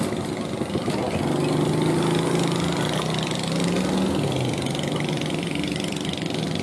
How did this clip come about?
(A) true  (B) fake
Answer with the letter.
A